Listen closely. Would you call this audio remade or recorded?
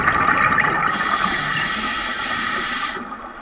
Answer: recorded